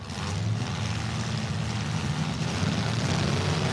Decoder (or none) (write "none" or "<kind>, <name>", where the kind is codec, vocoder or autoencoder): none